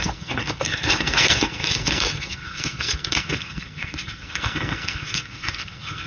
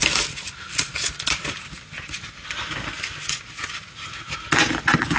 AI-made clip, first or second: first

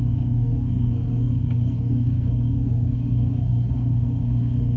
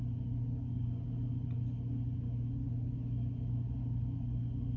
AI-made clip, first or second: first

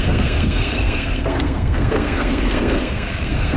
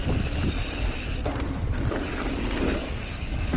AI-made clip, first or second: first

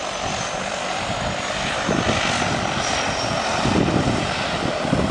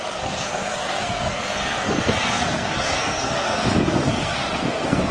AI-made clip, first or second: second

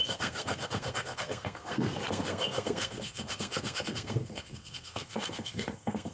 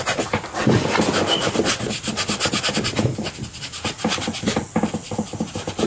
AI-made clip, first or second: first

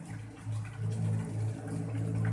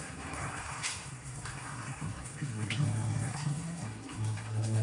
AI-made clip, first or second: second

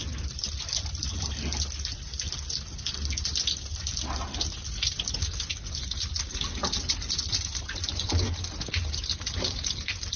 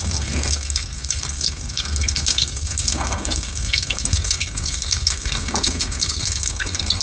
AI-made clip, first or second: second